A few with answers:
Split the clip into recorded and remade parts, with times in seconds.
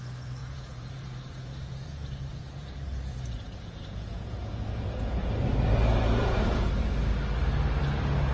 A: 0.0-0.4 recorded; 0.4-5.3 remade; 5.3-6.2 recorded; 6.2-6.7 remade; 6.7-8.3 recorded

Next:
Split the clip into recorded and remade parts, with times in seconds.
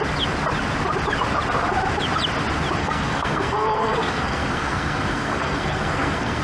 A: 0.0-2.8 recorded; 2.8-6.4 remade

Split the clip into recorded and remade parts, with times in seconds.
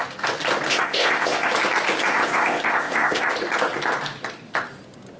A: 0.0-0.7 recorded; 0.7-1.5 remade; 1.5-2.1 recorded; 2.1-3.3 remade; 3.3-5.2 recorded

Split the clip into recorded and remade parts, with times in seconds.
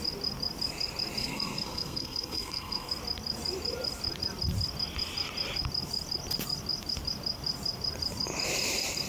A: 0.0-1.2 recorded; 1.2-2.9 remade; 2.9-9.1 recorded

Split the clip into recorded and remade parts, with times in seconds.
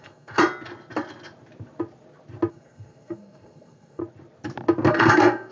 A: 0.0-0.4 remade; 0.4-2.5 recorded; 2.5-4.0 remade; 4.0-4.9 recorded; 4.9-5.5 remade